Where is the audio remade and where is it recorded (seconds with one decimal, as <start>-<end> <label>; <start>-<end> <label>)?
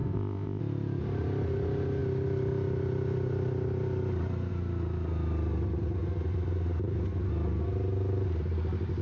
0.0-0.6 remade; 0.6-9.0 recorded